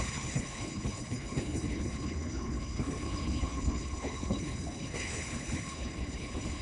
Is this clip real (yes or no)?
no